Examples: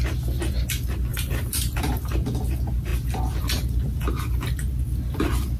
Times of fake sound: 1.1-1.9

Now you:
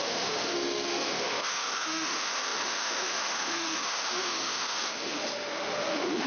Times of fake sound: 0.0-6.3

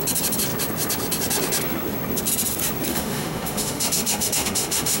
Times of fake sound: 2.9-5.0

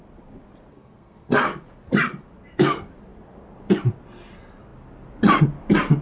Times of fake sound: 0.7-1.4

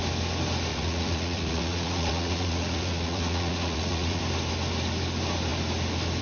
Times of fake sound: 0.7-4.2

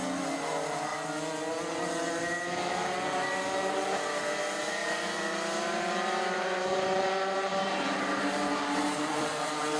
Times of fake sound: 4.8-9.8